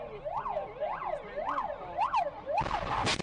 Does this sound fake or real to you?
real